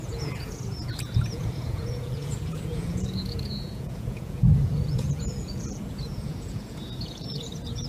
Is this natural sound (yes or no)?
no